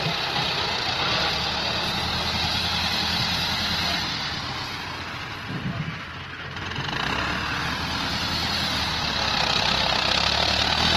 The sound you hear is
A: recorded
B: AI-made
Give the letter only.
A